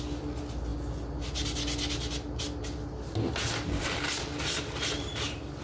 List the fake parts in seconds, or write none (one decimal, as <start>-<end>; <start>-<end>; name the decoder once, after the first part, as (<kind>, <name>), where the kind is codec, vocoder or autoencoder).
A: none